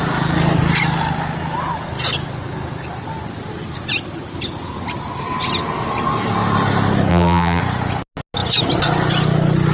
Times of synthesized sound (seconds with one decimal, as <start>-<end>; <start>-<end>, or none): 7.1-7.6